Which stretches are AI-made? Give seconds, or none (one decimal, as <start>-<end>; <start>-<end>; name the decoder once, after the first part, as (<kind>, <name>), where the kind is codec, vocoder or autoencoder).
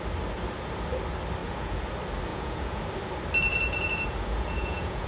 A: 1.4-1.9 (vocoder, Vocos); 2.3-2.8; 3.5-5.1